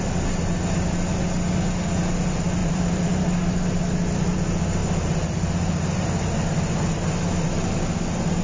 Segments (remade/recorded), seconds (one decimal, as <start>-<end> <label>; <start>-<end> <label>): 0.0-2.6 recorded; 2.6-3.2 remade; 3.2-4.8 recorded; 4.8-6.0 remade; 6.0-8.4 recorded